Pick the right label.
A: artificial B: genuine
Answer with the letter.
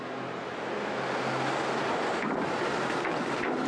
B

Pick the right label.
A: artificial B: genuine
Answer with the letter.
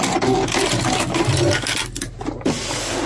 B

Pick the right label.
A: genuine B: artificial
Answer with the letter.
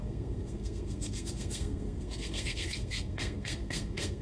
B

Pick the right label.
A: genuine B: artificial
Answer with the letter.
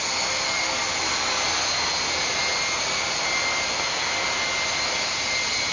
A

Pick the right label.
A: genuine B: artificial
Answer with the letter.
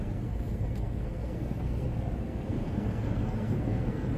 B